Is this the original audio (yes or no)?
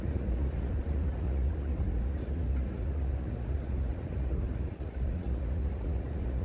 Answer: no